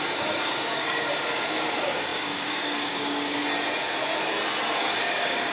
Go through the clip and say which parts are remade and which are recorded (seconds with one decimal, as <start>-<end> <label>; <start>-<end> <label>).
0.0-3.4 remade; 3.4-4.8 recorded; 4.8-5.5 remade